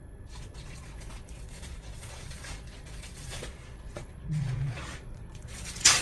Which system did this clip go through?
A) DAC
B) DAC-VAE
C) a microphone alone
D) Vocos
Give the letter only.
D